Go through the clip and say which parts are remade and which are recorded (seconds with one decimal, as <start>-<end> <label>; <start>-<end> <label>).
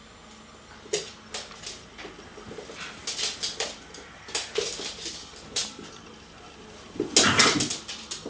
0.0-3.0 recorded; 3.0-6.1 remade; 6.1-8.3 recorded